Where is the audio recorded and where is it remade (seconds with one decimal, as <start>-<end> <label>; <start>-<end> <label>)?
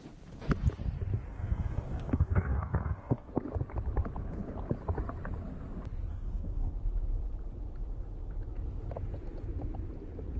0.0-1.3 recorded; 1.3-3.3 remade; 3.3-6.1 recorded; 6.1-6.7 remade; 6.7-10.4 recorded